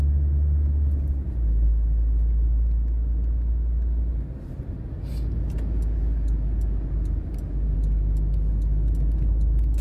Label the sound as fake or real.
real